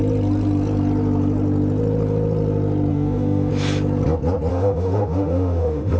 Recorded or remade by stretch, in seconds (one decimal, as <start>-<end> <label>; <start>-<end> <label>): 0.0-2.9 recorded; 2.9-3.5 remade; 3.5-4.5 recorded; 4.5-6.0 remade

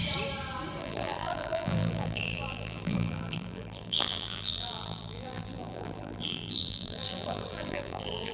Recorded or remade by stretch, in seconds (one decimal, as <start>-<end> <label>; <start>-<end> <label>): 0.0-0.8 recorded; 0.8-8.3 remade

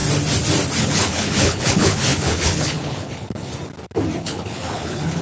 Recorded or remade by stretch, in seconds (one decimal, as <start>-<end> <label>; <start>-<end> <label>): 0.0-0.8 recorded; 0.8-3.5 remade; 3.5-4.2 recorded; 4.2-5.2 remade